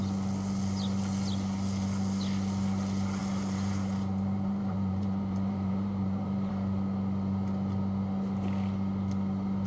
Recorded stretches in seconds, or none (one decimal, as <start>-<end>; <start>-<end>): 0.0-3.2; 6.5-9.7